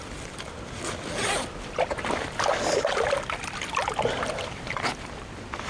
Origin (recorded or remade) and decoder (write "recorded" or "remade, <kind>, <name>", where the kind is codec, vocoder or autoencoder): recorded